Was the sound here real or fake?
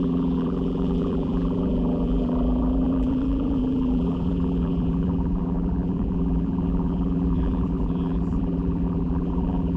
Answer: fake